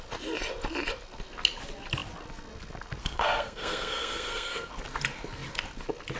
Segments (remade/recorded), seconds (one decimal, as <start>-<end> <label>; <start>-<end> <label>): 0.0-3.0 recorded; 3.0-4.7 remade; 4.7-6.2 recorded